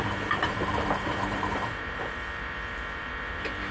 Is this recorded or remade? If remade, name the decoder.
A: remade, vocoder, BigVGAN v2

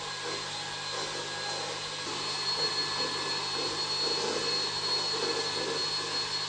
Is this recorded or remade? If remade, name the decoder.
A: recorded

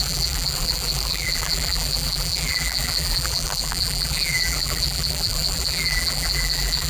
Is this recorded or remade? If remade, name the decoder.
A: remade, vocoder, BigVGAN v2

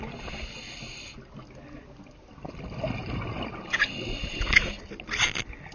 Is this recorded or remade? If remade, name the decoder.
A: recorded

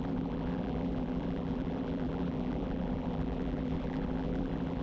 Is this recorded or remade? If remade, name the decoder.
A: remade, vocoder, BigVGAN v2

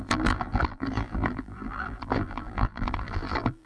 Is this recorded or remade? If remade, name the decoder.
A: remade, vocoder, BigVGAN v2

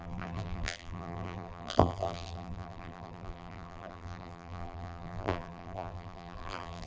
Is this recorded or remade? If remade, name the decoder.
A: remade, vocoder, BigVGAN v2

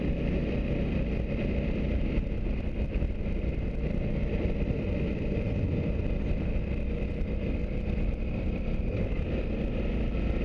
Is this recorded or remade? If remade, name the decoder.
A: remade, vocoder, BigVGAN v2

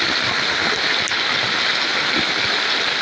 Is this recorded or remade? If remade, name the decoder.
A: recorded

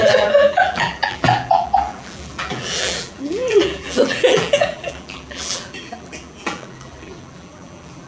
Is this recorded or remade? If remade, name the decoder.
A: remade, vocoder, BigVGAN v2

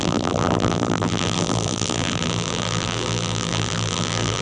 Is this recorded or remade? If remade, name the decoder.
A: remade, vocoder, BigVGAN v2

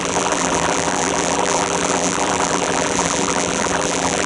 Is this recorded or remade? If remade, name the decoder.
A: remade, vocoder, BigVGAN v2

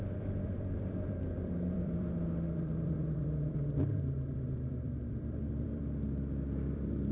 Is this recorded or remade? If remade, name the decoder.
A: remade, vocoder, BigVGAN v2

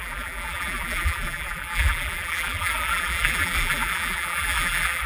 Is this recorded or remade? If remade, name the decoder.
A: remade, vocoder, BigVGAN v2